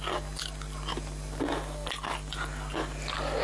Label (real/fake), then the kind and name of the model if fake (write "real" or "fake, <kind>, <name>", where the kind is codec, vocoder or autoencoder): real